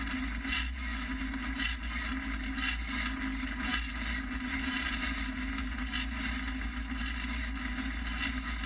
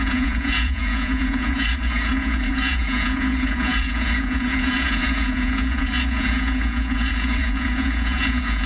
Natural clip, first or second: first